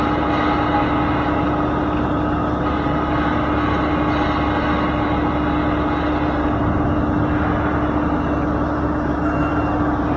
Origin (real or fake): real